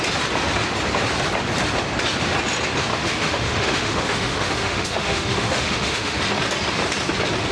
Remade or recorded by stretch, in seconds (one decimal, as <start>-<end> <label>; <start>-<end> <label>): 0.0-2.9 recorded; 2.9-6.2 remade; 6.2-7.5 recorded